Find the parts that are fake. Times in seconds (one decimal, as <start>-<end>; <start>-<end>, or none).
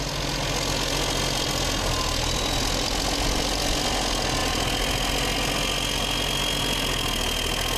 none